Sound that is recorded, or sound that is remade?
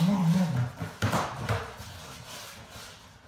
recorded